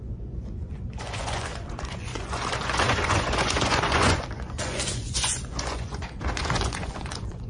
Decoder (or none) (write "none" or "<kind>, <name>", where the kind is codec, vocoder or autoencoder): vocoder, Vocos